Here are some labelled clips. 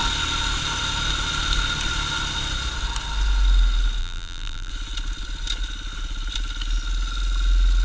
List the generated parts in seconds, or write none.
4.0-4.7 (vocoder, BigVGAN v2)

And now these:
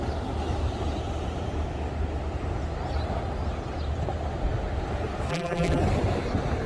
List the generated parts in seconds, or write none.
5.3-5.8 (vocoder, BigVGAN v2)

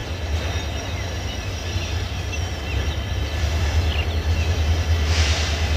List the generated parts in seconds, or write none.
0.0-3.5 (vocoder, BigVGAN v2)

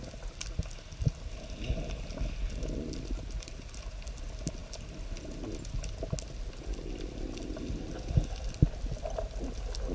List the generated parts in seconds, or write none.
none

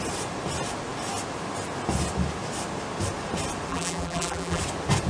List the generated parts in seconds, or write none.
3.7-4.6 (vocoder, BigVGAN v2)

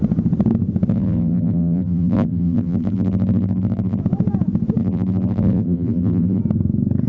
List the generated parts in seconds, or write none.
0.9-4.0 (vocoder, BigVGAN v2); 4.8-6.4

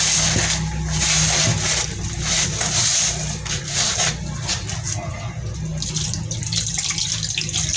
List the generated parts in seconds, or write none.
1.4-4.1 (vocoder, BigVGAN v2)

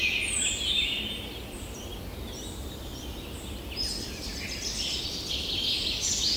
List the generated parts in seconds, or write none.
none